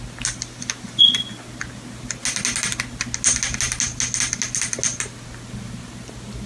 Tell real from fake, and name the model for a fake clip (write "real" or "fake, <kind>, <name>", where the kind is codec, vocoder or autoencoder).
real